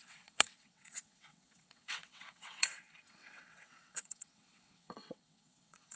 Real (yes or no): no